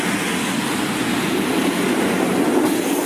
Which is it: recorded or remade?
recorded